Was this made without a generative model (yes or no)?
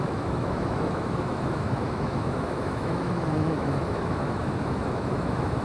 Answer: no